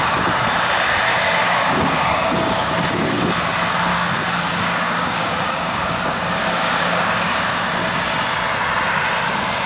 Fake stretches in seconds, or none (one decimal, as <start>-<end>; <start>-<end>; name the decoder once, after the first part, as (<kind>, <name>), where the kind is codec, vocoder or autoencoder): 1.1-3.2 (codec, DAC); 3.9-7.3